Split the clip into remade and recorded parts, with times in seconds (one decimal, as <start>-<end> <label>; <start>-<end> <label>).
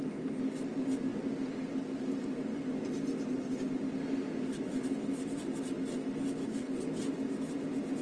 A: 0.0-6.4 recorded; 6.4-7.0 remade; 7.0-8.0 recorded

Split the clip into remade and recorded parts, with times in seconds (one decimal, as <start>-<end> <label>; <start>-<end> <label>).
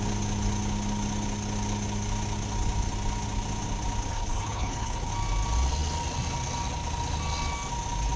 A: 0.0-4.1 recorded; 4.1-5.1 remade; 5.1-8.2 recorded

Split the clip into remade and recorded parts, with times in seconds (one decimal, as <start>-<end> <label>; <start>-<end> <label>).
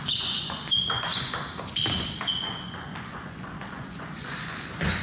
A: 0.0-1.3 remade; 1.3-2.1 recorded; 2.1-5.0 remade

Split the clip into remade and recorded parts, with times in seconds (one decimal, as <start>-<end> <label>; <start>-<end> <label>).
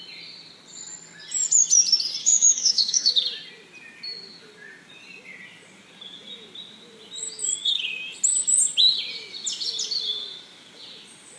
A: 0.0-2.2 recorded; 2.2-3.1 remade; 3.1-11.4 recorded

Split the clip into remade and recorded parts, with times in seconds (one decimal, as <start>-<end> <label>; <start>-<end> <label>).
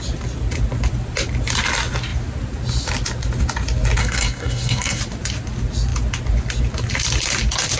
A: 0.0-4.0 recorded; 4.0-5.0 remade; 5.0-7.8 recorded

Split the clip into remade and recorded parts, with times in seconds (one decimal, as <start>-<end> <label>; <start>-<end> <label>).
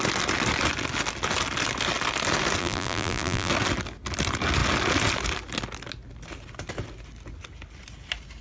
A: 0.0-2.6 recorded; 2.6-3.5 remade; 3.5-8.4 recorded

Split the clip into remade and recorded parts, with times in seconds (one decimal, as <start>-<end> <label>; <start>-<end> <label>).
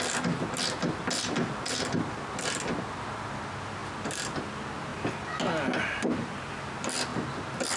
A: 0.0-7.8 recorded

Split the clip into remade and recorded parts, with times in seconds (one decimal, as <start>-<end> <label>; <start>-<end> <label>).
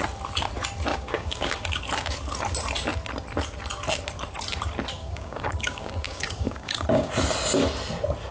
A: 0.0-0.9 recorded; 0.9-1.8 remade; 1.8-5.0 recorded; 5.0-7.1 remade; 7.1-8.3 recorded